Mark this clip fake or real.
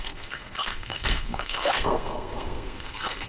fake